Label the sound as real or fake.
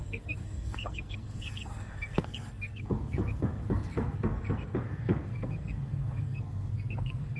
fake